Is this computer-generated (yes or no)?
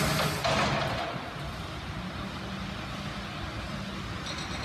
no